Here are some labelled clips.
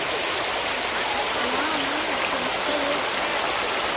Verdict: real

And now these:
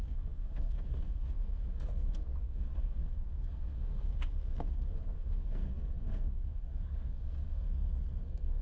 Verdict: fake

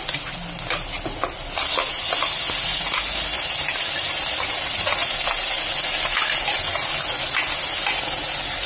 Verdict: real